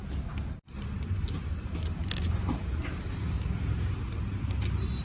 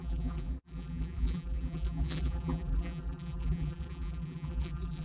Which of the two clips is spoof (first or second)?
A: second